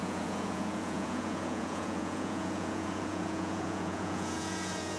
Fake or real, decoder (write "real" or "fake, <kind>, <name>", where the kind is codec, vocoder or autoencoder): fake, vocoder, Vocos